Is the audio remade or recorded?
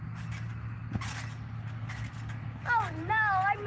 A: recorded